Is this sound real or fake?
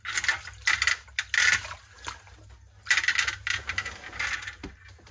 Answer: real